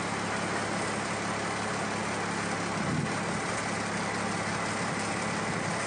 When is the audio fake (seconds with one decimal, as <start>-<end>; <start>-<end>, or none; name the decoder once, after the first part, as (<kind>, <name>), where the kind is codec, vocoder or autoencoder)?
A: none